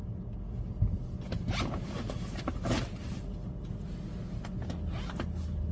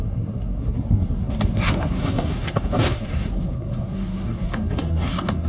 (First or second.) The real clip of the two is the first